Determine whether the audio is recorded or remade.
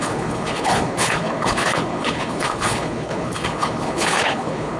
remade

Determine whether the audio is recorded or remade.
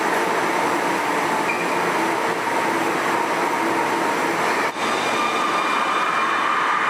recorded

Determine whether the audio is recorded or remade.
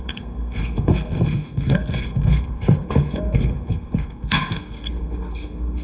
remade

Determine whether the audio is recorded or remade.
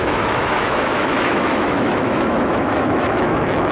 remade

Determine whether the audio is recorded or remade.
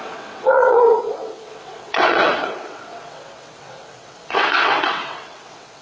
remade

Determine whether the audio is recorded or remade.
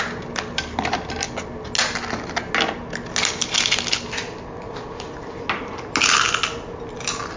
recorded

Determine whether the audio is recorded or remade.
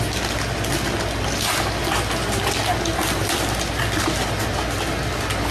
recorded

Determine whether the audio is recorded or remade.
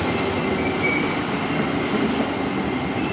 recorded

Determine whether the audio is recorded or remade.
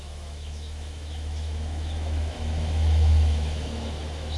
remade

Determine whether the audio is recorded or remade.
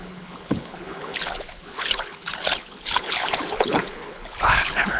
remade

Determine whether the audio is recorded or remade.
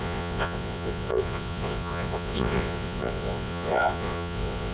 remade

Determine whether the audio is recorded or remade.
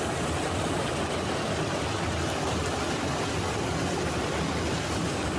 recorded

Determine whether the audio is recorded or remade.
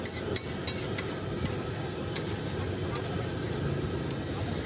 recorded